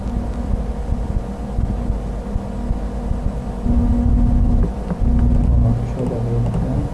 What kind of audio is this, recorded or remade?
recorded